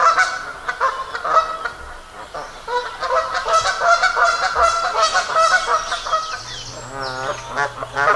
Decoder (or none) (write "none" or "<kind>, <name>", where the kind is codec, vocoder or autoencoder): none